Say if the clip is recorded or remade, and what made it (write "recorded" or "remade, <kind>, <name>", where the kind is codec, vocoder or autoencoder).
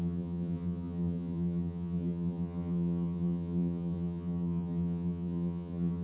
remade, vocoder, HiFi-GAN